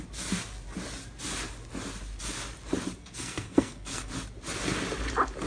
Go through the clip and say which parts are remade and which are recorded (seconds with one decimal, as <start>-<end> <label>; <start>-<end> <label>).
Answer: 0.0-3.0 recorded; 3.0-4.1 remade; 4.1-5.5 recorded